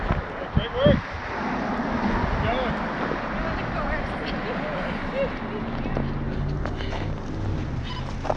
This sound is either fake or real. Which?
real